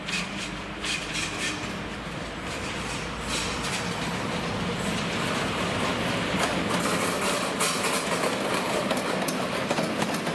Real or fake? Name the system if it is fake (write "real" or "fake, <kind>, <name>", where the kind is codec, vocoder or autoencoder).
real